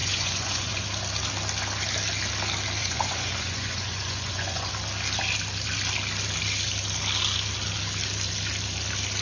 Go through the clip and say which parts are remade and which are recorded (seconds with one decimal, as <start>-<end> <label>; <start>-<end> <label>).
0.0-0.8 remade; 0.8-2.8 recorded; 2.8-4.7 remade; 4.7-9.2 recorded